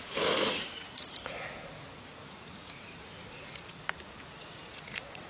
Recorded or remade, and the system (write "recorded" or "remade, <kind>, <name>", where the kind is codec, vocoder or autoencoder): remade, vocoder, Vocos